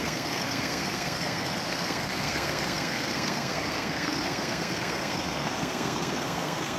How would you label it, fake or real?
fake